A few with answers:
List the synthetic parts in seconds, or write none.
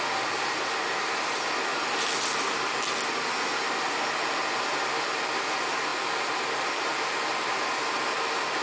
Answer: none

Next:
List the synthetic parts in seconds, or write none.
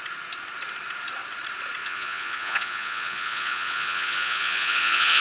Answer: 1.8-5.2 (vocoder, Vocos)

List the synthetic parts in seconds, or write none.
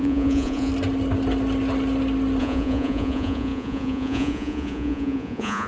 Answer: 0.0-0.7 (vocoder, Vocos); 2.4-5.7